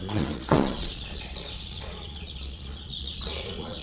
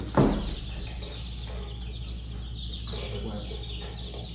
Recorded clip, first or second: second